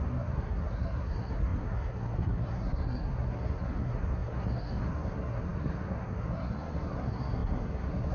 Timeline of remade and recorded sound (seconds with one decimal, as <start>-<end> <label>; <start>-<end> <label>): 0.0-8.1 remade